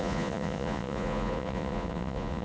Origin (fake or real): fake